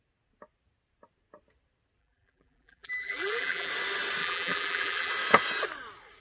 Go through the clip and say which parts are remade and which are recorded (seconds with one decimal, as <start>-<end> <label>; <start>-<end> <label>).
0.0-2.0 recorded; 2.0-3.7 remade; 3.7-4.2 recorded; 4.2-5.1 remade; 5.1-6.2 recorded